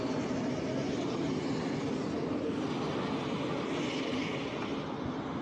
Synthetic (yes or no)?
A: no